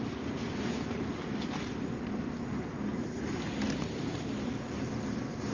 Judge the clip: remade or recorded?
recorded